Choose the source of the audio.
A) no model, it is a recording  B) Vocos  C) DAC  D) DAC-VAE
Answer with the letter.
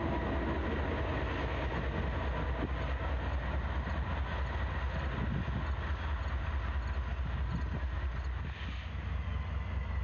A